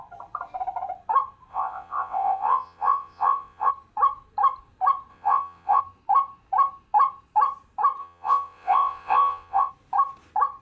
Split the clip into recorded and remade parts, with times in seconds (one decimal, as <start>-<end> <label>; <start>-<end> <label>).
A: 0.0-1.5 recorded; 1.5-3.7 remade; 3.7-5.1 recorded; 5.1-5.8 remade; 5.8-8.0 recorded; 8.0-9.7 remade; 9.7-10.6 recorded